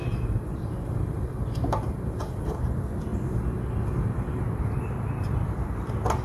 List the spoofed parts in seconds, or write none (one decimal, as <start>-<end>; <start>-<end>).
0.0-2.6; 3.1-4.4